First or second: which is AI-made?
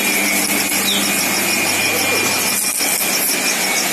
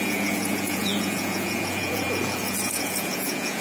second